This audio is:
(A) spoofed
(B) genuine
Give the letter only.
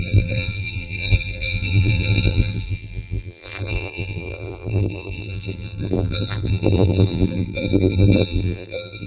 A